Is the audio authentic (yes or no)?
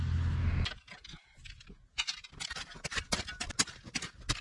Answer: yes